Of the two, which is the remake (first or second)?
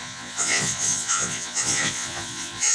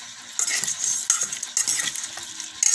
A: first